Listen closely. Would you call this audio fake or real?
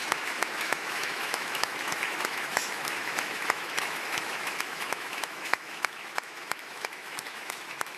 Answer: fake